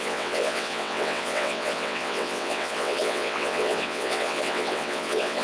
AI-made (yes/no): yes